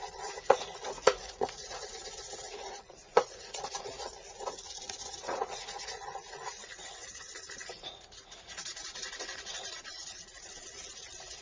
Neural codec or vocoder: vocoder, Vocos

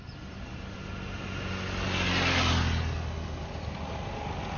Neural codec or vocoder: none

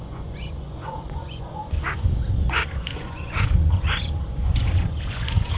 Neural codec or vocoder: vocoder, Vocos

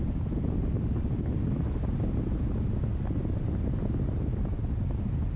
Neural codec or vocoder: none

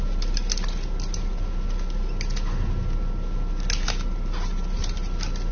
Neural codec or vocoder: none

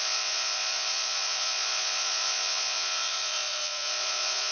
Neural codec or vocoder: vocoder, Vocos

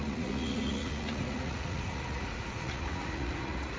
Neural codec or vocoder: vocoder, Vocos